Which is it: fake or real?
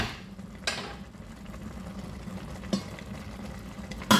real